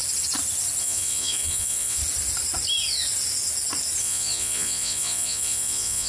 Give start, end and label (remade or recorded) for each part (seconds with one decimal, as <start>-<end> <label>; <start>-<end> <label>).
0.0-0.8 recorded; 0.8-2.0 remade; 2.0-4.0 recorded; 4.0-6.1 remade